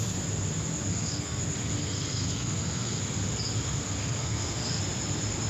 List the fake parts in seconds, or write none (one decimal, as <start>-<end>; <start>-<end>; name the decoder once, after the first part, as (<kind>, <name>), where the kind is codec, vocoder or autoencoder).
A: 0.9-1.4 (codec, SNAC); 1.8-3.0; 4.0-4.8